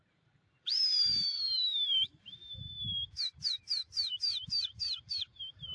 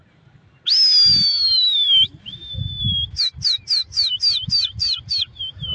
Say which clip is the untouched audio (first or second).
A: second